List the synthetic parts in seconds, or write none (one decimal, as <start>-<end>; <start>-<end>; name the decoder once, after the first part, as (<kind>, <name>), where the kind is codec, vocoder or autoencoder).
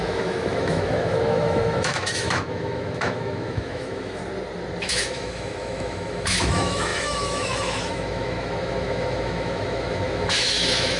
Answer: 0.0-4.2 (autoencoder, DAC-VAE); 4.8-11.0